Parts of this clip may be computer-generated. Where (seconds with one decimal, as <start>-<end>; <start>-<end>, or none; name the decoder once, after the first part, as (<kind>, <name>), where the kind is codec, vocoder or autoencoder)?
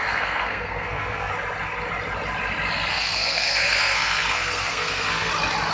0.0-1.3 (codec, SNAC); 2.9-5.3